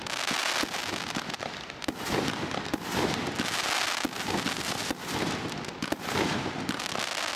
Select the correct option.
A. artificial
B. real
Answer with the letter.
B